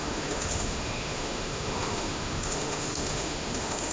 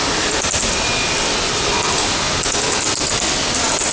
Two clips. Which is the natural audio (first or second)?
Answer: second